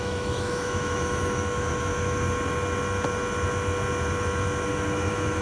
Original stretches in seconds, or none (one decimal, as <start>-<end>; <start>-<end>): 1.9-4.7